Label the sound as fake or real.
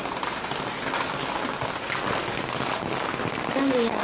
real